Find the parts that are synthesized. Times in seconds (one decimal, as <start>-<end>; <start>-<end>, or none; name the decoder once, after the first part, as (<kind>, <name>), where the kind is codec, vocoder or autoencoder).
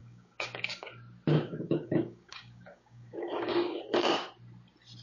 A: 0.0-0.9 (codec, DAC); 1.3-4.3